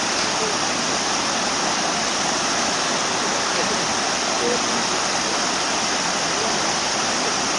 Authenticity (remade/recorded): recorded